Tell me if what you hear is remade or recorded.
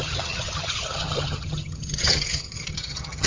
remade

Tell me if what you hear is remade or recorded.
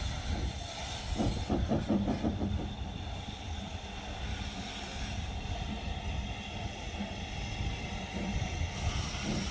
recorded